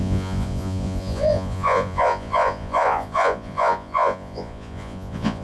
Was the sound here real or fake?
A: fake